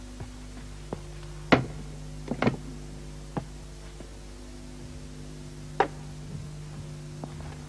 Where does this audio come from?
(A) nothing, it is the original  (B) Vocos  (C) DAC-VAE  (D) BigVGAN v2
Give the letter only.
A